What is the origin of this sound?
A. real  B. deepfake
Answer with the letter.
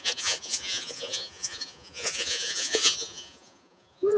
B